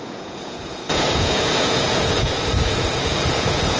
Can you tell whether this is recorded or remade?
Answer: remade